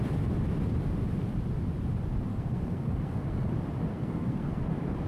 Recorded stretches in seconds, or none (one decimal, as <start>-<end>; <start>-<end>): 0.0-2.3; 3.5-3.9; 4.6-5.1